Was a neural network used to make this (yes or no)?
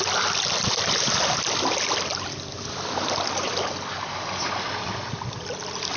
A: no